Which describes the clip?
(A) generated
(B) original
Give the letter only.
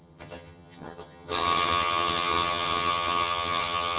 A